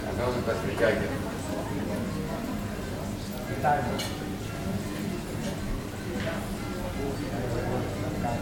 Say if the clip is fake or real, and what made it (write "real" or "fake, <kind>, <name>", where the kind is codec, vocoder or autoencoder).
real